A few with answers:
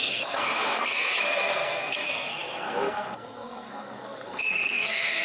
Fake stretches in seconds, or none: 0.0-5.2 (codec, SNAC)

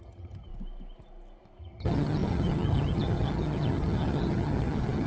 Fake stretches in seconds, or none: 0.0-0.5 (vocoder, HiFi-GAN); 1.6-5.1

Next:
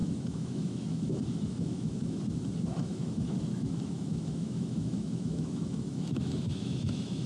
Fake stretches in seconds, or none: 0.0-2.2 (autoencoder, DAC-VAE); 2.8-7.3